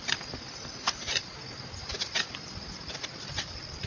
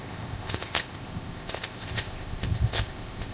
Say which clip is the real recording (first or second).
first